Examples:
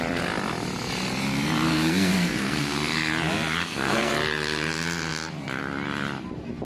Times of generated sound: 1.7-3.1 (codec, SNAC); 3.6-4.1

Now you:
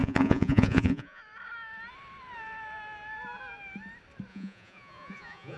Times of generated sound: 0.0-1.2 (vocoder, Vocos); 4.3-5.6

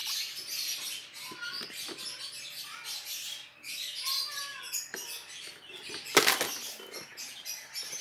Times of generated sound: none

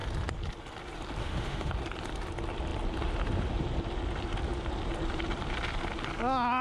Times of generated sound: 1.2-1.7 (autoencoder, DAC-VAE)

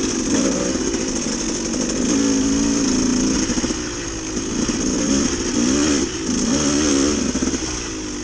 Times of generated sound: none